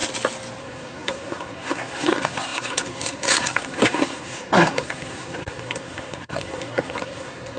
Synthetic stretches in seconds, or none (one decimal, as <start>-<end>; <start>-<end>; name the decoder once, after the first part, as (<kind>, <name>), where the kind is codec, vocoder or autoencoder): 0.6-7.6 (codec, SNAC)